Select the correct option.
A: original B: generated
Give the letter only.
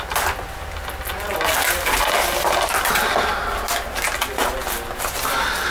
A